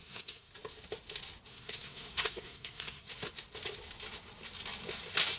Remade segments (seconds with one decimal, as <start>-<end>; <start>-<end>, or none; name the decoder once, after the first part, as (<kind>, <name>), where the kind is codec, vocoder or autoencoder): 0.0-0.5 (codec, SNAC); 1.5-3.1